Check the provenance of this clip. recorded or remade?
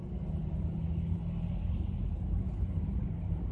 recorded